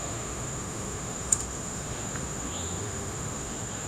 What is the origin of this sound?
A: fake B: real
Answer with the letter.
A